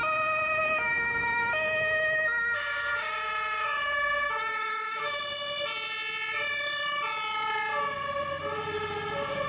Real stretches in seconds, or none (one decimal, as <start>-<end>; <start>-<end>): 0.0-0.6; 5.2-9.5